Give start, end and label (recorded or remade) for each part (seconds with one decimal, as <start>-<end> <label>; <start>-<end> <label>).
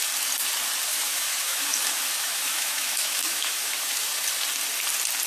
0.0-0.9 recorded; 0.9-4.1 remade; 4.1-5.3 recorded